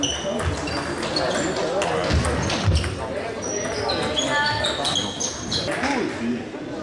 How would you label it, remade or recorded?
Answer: recorded